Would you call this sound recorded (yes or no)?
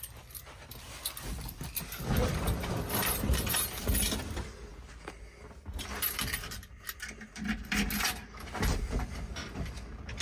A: yes